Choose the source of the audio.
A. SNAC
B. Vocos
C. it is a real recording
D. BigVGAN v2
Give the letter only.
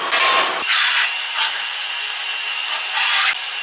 C